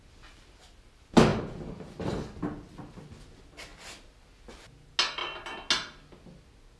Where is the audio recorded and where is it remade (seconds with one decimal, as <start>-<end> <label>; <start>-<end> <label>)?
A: 0.0-6.8 recorded